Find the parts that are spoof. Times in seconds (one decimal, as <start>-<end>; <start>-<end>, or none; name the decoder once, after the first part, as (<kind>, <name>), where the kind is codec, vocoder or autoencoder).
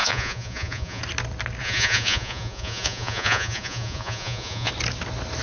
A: 0.0-1.0 (vocoder, Vocos); 1.6-4.7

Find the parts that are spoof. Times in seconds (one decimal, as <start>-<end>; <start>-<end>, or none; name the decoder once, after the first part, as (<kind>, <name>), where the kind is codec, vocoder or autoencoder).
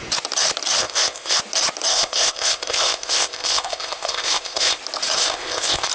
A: 0.8-1.4 (codec, ZipCodec); 1.9-4.8; 5.2-5.9